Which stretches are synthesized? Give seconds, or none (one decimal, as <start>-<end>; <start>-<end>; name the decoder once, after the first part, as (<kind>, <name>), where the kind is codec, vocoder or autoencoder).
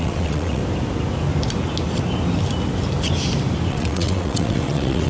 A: 0.0-0.6 (vocoder, WaveNeXt); 3.7-5.1